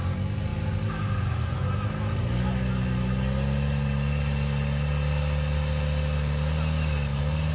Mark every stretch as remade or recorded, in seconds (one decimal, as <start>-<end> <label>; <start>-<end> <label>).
0.0-7.5 recorded